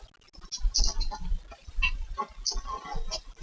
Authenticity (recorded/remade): recorded